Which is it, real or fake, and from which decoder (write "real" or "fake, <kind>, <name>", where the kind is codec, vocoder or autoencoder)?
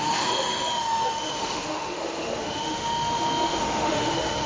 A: fake, autoencoder, DAC-VAE